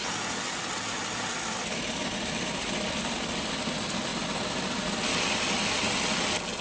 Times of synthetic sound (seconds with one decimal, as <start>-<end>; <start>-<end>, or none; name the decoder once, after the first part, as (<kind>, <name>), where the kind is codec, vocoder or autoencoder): none